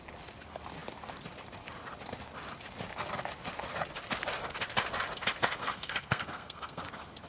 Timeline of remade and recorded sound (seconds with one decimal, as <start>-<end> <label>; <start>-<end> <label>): 0.0-5.6 recorded; 5.6-6.8 remade; 6.8-7.3 recorded